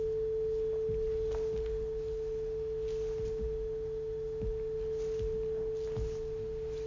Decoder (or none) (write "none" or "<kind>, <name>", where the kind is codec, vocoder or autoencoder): none